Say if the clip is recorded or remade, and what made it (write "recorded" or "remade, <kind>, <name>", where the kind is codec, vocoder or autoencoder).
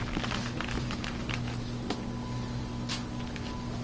recorded